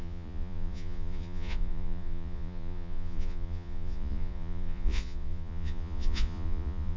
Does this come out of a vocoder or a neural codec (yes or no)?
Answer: yes